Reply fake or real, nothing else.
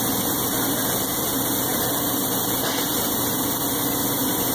real